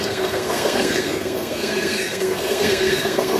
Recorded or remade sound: remade